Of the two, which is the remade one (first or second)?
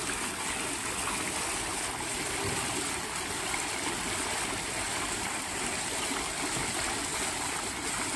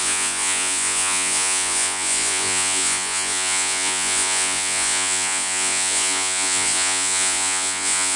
second